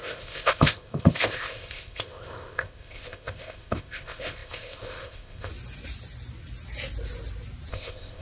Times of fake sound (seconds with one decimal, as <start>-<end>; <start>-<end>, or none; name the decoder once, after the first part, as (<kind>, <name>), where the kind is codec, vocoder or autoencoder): 0.0-5.5 (codec, ZipCodec); 7.7-8.2